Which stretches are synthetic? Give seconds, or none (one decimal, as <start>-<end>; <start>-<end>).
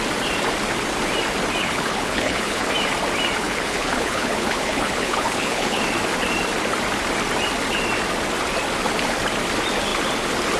1.6-2.7; 3.4-5.8